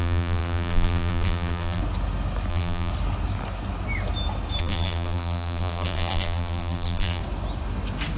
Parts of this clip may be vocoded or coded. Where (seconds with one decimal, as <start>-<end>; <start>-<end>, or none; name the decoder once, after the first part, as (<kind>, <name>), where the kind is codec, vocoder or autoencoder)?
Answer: 0.0-1.8 (vocoder, BigVGAN v2); 2.5-2.9; 4.6-7.2